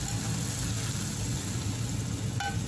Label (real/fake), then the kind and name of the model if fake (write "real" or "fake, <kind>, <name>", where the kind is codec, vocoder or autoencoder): real